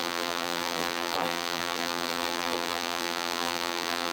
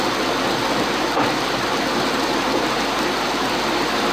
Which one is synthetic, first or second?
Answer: first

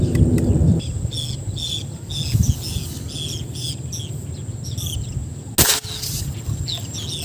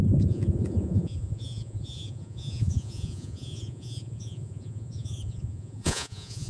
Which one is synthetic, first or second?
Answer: second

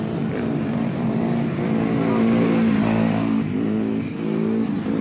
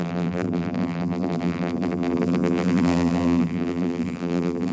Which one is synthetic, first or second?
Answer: second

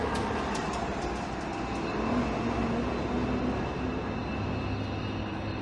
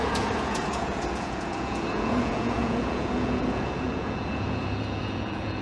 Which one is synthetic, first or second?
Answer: second